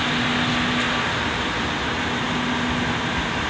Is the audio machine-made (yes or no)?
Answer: no